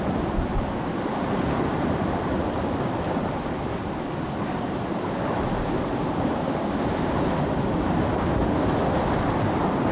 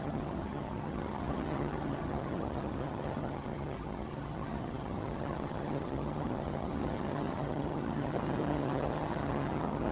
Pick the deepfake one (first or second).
second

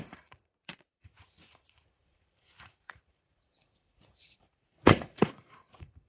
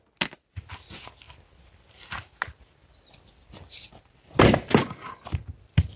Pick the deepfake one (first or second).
first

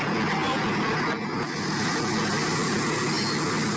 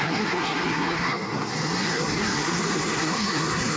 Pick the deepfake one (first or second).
second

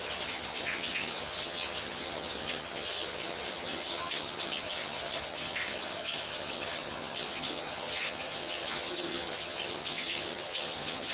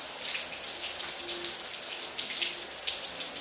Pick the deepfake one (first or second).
first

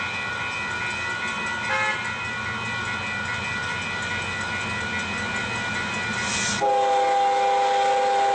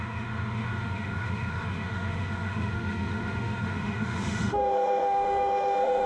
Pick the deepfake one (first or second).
second